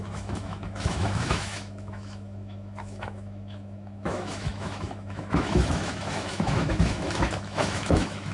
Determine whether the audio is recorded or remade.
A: remade